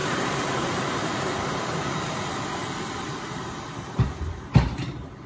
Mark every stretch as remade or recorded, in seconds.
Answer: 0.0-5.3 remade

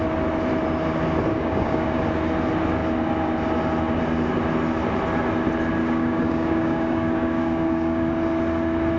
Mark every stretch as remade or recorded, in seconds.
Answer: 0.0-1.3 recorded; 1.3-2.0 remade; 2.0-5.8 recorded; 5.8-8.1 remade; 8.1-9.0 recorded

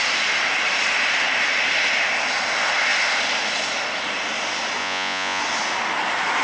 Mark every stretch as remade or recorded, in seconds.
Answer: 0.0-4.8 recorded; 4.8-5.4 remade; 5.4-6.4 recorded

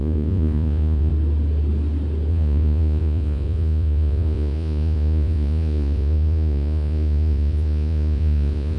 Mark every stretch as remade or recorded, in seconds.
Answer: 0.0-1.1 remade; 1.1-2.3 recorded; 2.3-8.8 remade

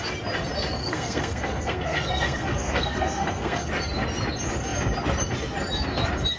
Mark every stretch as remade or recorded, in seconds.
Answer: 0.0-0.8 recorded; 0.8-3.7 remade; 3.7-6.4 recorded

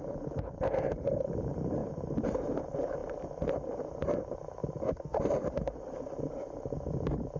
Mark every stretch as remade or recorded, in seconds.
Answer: 0.0-7.4 remade